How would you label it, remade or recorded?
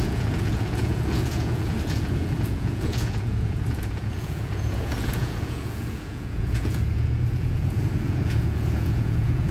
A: remade